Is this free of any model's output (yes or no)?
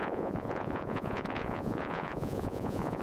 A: no